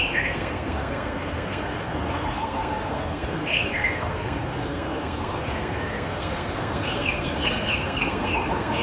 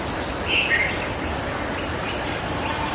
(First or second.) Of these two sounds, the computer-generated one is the first